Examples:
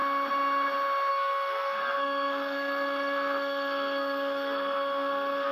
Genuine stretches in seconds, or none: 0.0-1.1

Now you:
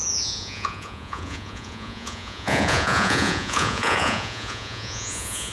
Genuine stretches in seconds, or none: none

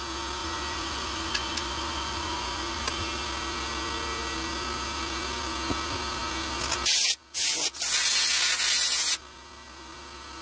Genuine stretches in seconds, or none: 0.0-0.4; 2.8-10.4

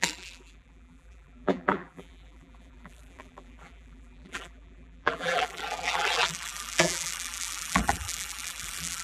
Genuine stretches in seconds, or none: none

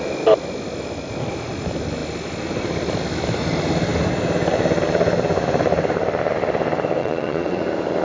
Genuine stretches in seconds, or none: 0.0-7.0; 7.6-8.0

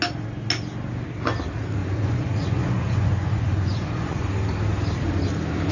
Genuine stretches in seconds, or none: 0.0-1.8; 4.3-5.7

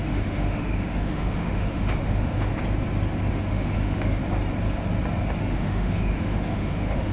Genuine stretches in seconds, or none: 2.5-3.3; 4.2-5.4